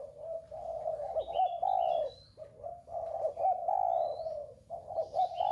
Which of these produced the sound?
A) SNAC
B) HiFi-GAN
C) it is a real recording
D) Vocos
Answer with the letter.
C